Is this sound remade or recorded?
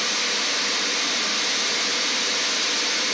recorded